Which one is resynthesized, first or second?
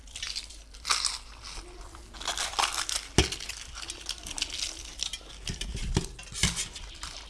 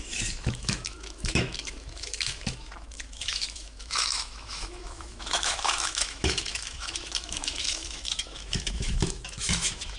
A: second